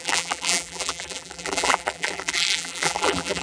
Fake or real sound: fake